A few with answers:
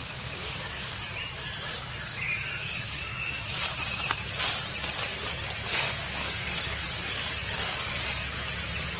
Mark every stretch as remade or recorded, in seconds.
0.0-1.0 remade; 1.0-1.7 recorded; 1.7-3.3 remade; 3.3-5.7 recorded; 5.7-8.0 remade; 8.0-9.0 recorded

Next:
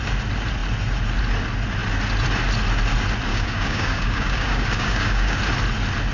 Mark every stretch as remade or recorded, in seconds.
0.0-3.3 recorded; 3.3-5.4 remade; 5.4-6.1 recorded

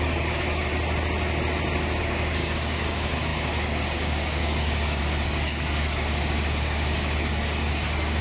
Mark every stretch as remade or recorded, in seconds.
0.0-0.7 remade; 0.7-2.0 recorded; 2.0-8.2 remade

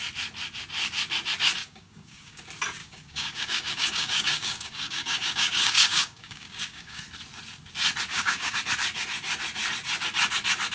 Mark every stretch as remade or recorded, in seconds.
0.0-1.6 recorded; 1.6-2.4 remade; 2.4-2.8 recorded; 2.8-7.0 remade; 7.0-8.1 recorded; 8.1-8.6 remade; 8.6-10.7 recorded

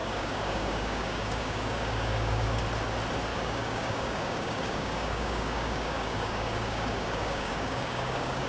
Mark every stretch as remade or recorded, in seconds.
0.0-2.6 remade; 2.6-3.3 recorded; 3.3-8.5 remade

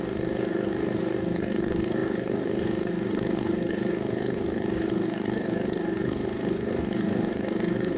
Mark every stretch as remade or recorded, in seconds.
0.0-8.0 remade